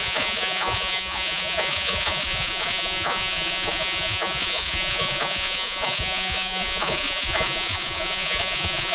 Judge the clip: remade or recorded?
remade